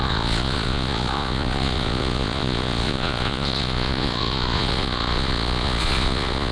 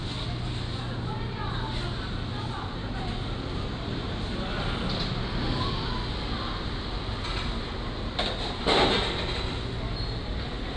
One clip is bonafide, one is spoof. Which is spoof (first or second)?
first